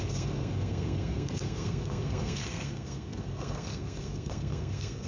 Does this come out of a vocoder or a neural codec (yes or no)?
yes